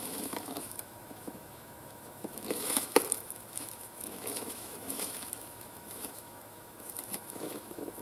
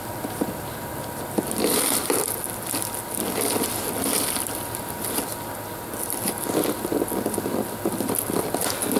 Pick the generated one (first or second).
first